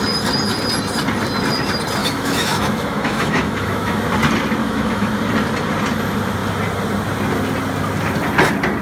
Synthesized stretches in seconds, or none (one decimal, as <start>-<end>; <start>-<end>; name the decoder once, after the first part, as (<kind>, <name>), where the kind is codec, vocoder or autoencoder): 2.0-4.0 (autoencoder, DAC-VAE); 4.6-5.1